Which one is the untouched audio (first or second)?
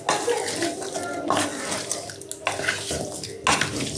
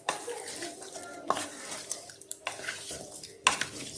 first